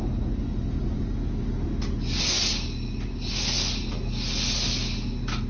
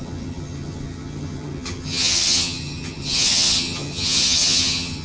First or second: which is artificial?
second